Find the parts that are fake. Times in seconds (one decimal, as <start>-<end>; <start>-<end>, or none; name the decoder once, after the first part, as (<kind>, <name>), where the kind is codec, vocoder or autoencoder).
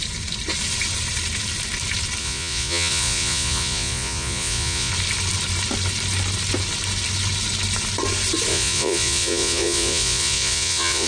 2.2-4.9 (vocoder, Vocos); 8.5-11.1